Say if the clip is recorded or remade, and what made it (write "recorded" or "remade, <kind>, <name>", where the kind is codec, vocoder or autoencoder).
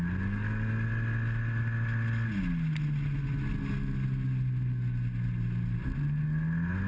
recorded